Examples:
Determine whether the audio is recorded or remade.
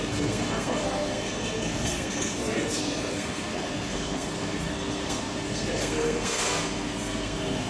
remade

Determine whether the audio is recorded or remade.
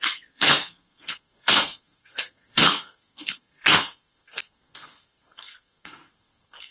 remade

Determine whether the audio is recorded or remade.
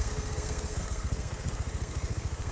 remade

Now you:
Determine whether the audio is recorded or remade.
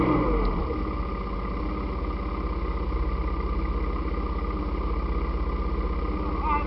recorded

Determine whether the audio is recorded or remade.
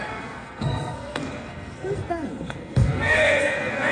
remade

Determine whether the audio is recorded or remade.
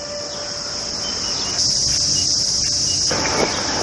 recorded